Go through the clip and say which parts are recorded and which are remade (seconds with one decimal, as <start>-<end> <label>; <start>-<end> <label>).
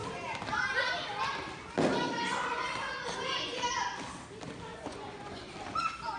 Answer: 0.0-4.7 recorded; 4.7-5.5 remade; 5.5-6.2 recorded